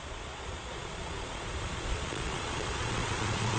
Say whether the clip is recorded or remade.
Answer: remade